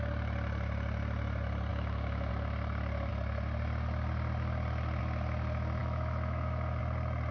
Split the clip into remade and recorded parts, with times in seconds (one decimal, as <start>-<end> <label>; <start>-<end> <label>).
0.0-1.7 recorded; 1.7-2.3 remade; 2.3-5.8 recorded; 5.8-6.8 remade; 6.8-7.3 recorded